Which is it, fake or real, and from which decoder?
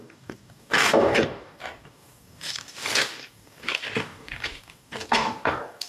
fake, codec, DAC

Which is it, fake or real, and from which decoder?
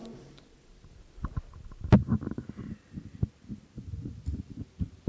real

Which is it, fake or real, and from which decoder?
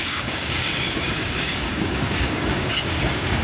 fake, codec, DAC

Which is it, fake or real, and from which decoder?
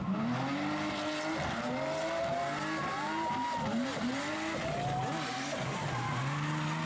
real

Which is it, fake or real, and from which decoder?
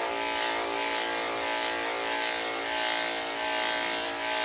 real